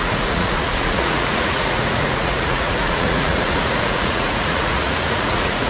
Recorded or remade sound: remade